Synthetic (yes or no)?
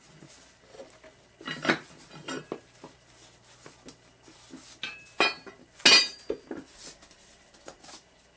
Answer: no